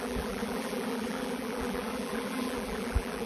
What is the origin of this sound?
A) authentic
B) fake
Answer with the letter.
B